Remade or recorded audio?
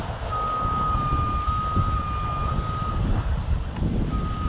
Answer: recorded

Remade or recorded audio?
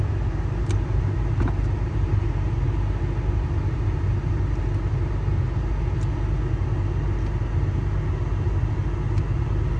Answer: recorded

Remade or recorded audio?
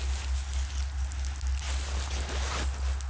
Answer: recorded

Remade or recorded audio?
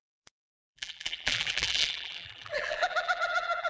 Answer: remade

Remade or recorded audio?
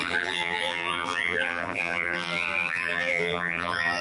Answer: remade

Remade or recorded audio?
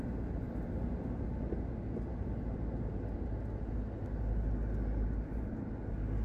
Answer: recorded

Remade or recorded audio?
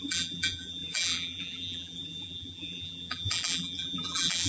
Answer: remade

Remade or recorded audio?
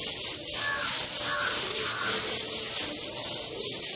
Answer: recorded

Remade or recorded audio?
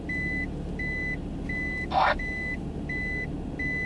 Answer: recorded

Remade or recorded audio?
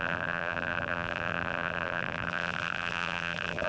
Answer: remade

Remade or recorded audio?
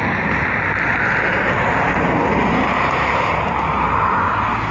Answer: recorded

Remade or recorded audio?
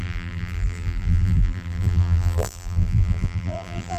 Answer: remade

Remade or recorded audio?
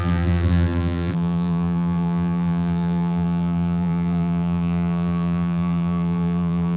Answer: remade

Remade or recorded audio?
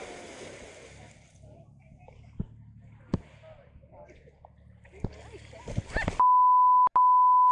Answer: recorded